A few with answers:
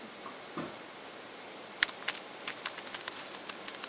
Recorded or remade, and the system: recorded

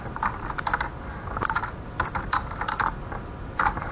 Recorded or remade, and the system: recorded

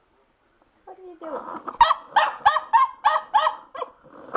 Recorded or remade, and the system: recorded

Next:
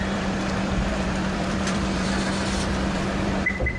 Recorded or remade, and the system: remade, vocoder, BigVGAN v2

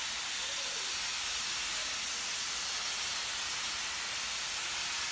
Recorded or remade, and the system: recorded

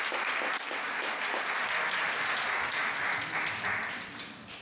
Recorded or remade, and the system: recorded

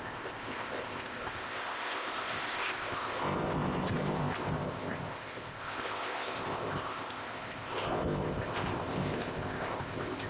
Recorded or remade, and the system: remade, codec, ZipCodec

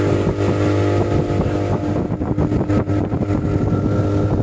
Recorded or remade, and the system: recorded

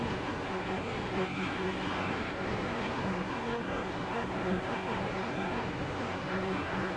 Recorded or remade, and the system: remade, codec, SNAC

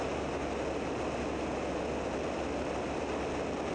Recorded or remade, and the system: recorded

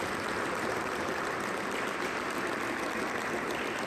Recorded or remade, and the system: recorded